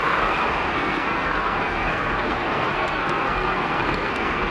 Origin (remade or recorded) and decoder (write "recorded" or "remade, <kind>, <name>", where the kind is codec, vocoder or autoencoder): remade, codec, SNAC